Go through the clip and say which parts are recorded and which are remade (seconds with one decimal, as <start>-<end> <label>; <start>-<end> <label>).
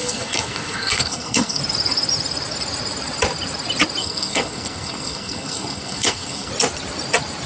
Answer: 0.0-1.6 remade; 1.6-4.0 recorded; 4.0-6.5 remade; 6.5-7.5 recorded